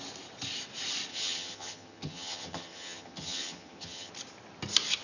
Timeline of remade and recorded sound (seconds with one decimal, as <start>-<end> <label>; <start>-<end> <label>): 0.0-1.1 recorded; 1.1-4.1 remade; 4.1-5.0 recorded